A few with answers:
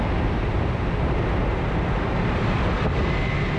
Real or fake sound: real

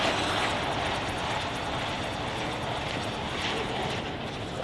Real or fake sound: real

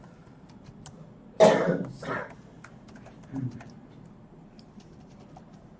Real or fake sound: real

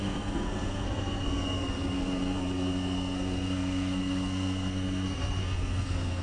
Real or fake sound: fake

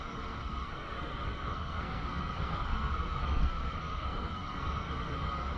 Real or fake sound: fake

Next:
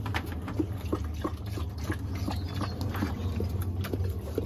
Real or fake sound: real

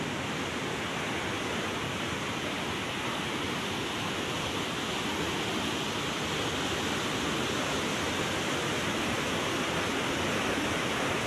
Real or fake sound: real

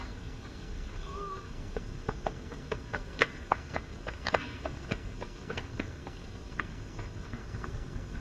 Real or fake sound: fake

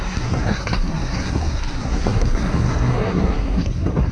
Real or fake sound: fake